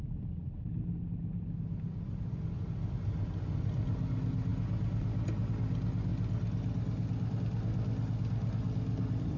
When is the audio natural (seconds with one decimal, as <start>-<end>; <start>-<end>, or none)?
0.0-9.4